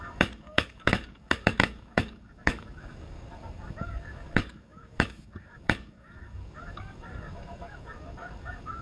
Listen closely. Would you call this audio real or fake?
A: fake